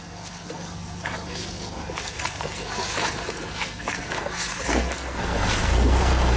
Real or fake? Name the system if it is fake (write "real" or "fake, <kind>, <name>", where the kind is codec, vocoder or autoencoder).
fake, codec, SNAC